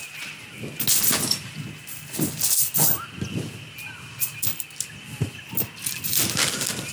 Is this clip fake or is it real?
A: real